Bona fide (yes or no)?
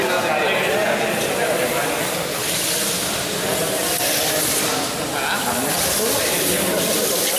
yes